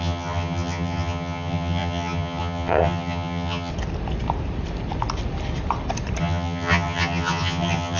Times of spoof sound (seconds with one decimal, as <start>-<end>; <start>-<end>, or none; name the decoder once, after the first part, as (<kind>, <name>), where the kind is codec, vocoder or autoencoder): 0.0-3.7 (vocoder, HiFi-GAN); 6.2-8.0